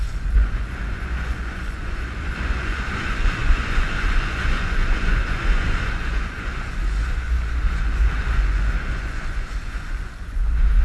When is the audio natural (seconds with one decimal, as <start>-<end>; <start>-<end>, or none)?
none

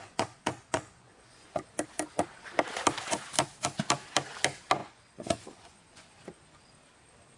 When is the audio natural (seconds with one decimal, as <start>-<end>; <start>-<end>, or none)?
1.7-4.8; 6.6-7.4

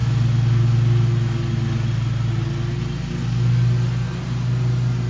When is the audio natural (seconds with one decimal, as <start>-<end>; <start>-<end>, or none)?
0.0-5.1